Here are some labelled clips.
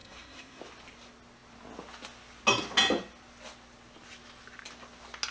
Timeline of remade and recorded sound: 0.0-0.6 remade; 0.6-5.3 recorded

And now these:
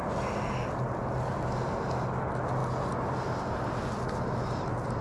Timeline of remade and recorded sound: 0.0-5.0 recorded

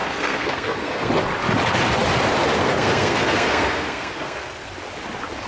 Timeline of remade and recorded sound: 0.0-1.1 remade; 1.1-2.6 recorded; 2.6-4.7 remade; 4.7-5.5 recorded